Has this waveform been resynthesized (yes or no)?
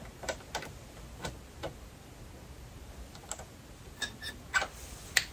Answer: no